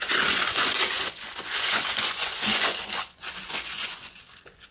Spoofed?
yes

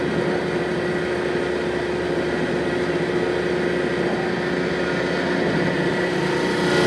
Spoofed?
no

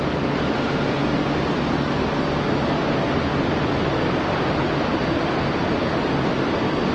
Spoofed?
no